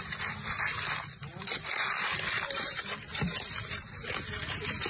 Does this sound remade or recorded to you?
remade